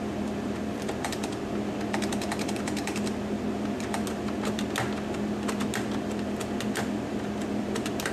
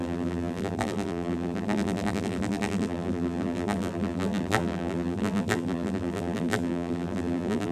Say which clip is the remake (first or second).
second